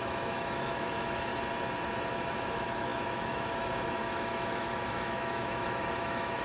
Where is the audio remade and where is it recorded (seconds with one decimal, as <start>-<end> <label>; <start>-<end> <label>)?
0.0-1.3 remade; 1.3-2.1 recorded; 2.1-6.4 remade